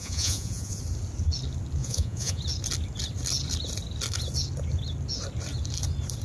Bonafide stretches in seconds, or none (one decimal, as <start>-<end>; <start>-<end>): 0.8-1.8; 2.4-6.2